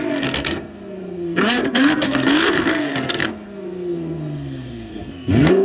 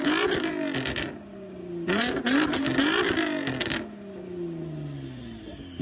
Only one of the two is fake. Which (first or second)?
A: first